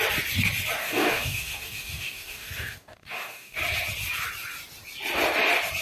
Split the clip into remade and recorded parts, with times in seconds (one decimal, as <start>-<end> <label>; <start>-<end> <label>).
0.0-0.8 recorded; 0.8-3.6 remade; 3.6-5.8 recorded